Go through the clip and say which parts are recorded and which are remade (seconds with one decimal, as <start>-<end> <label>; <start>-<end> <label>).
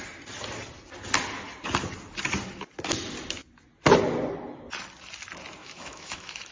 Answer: 0.0-5.6 recorded; 5.6-6.5 remade